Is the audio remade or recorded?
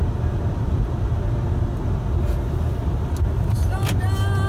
recorded